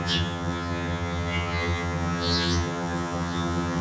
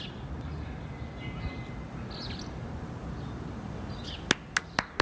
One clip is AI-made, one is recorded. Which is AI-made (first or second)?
first